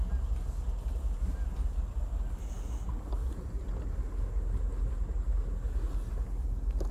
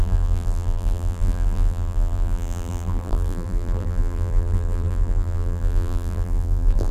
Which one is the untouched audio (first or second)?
first